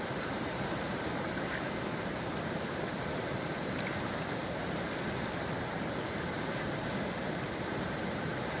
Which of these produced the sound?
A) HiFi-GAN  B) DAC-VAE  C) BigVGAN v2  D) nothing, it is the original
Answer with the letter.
C